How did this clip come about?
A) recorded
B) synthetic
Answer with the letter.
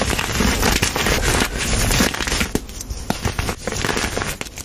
A